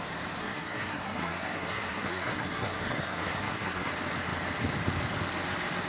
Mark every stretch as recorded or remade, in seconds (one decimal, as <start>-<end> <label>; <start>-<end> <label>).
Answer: 0.0-0.4 recorded; 0.4-3.9 remade; 3.9-5.9 recorded